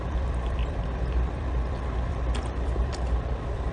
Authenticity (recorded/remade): remade